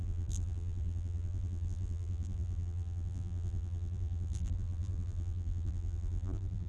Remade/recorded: remade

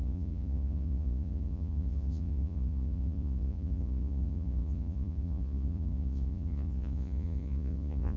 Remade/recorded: remade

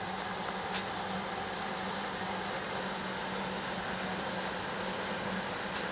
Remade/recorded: recorded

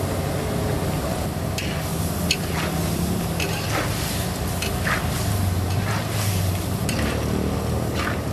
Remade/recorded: recorded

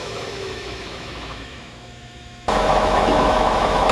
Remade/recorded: remade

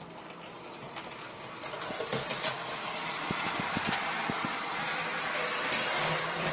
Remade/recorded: recorded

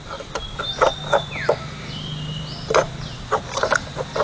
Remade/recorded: recorded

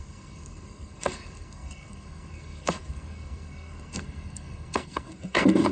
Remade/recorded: remade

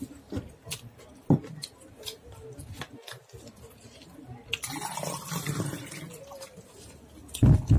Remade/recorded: recorded